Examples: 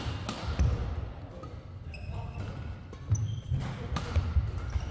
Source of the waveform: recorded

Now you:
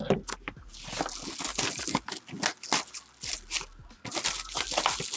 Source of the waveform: recorded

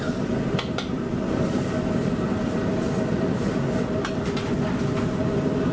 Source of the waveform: recorded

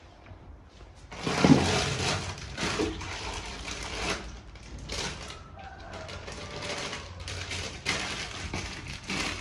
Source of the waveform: remade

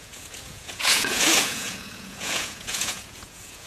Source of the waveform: remade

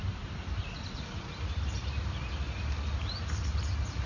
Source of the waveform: recorded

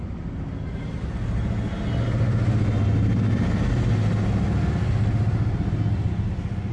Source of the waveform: recorded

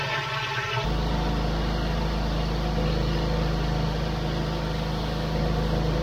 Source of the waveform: recorded